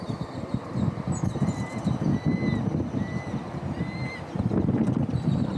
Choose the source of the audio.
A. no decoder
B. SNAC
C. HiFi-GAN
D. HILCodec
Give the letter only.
A